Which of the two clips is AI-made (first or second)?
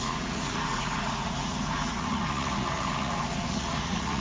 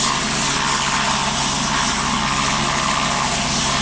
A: first